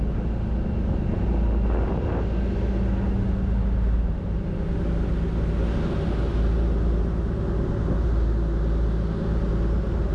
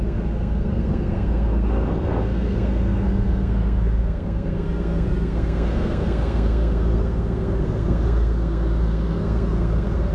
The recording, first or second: first